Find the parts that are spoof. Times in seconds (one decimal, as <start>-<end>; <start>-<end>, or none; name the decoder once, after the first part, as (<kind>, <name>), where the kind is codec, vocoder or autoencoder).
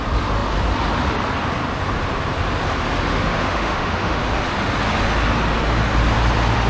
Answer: 3.1-4.2 (autoencoder, DAC-VAE)